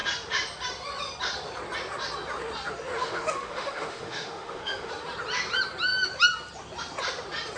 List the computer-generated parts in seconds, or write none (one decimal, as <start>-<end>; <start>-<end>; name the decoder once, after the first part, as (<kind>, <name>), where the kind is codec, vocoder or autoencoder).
3.0-4.9 (autoencoder, DAC-VAE)